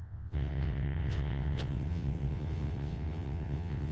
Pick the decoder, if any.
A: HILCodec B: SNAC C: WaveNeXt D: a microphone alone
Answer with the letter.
C